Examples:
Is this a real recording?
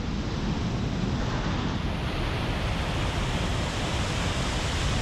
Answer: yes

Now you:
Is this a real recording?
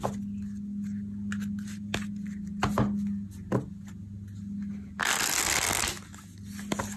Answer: yes